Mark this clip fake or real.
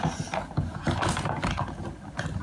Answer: real